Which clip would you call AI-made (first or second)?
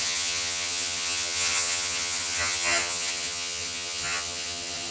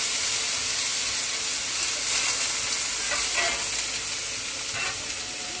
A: first